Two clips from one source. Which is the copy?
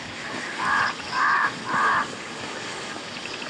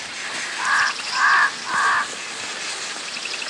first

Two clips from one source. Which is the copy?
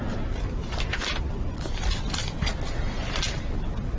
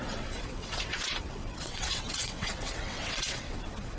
second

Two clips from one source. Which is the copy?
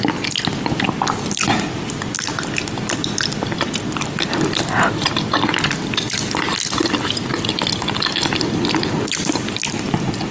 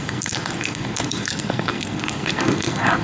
second